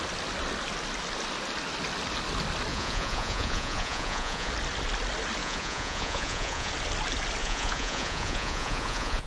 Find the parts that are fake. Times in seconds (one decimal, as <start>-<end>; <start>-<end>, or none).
2.7-4.5; 5.4-6.7; 7.4-9.3